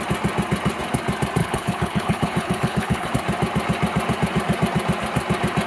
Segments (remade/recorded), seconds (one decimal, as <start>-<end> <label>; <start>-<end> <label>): 0.0-1.4 recorded; 1.4-3.1 remade; 3.1-5.7 recorded